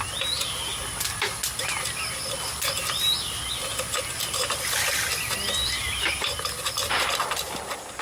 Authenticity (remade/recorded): recorded